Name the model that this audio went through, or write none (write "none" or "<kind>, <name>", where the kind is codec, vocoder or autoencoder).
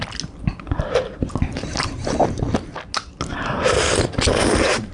none